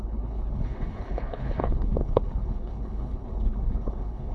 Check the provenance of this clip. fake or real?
fake